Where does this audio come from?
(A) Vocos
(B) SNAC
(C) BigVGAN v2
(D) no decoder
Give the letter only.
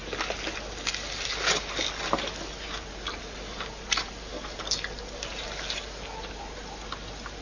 D